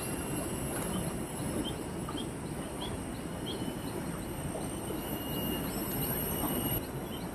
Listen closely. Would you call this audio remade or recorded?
recorded